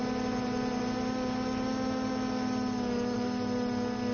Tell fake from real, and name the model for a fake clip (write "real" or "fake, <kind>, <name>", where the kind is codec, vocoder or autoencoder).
real